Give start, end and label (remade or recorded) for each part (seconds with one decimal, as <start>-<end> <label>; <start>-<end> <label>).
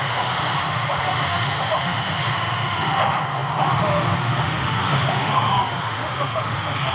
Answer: 0.0-6.9 remade